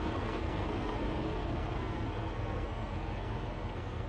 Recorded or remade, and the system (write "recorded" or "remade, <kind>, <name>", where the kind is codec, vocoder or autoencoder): remade, codec, SNAC